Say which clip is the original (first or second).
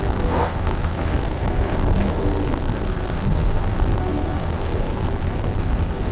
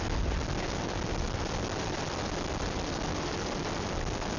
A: second